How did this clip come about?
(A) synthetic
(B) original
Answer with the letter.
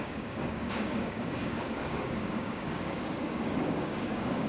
A